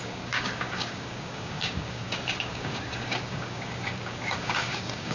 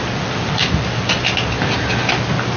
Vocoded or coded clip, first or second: first